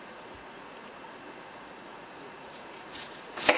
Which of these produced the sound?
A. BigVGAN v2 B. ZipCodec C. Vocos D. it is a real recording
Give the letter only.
C